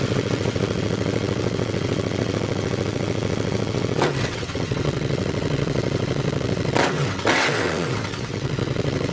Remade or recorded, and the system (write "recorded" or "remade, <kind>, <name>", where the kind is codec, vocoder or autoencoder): remade, vocoder, WaveNeXt